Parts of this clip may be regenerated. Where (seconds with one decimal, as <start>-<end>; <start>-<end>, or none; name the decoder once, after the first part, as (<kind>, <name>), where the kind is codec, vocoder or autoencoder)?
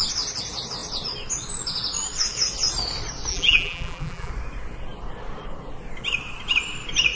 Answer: 3.3-4.3 (vocoder, BigVGAN v2)